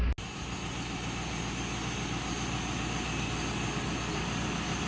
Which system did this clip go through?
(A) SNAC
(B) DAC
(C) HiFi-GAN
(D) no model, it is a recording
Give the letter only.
D